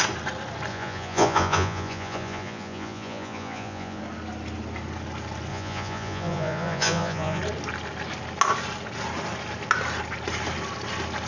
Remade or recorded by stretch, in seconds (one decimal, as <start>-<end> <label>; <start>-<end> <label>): 0.0-0.7 recorded; 0.7-4.0 remade; 4.0-5.5 recorded; 5.5-7.4 remade; 7.4-11.3 recorded